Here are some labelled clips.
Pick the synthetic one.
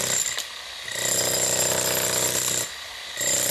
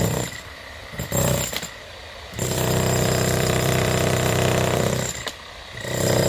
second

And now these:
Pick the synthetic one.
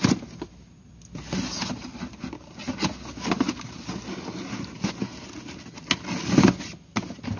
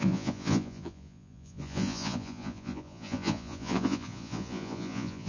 second